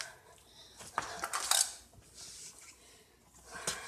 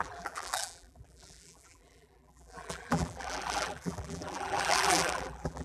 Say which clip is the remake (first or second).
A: second